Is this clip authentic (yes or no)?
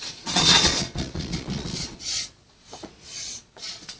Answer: no